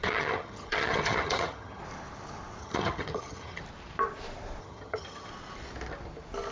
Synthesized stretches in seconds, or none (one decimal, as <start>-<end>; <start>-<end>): 0.0-1.8; 2.6-3.6; 4.6-5.3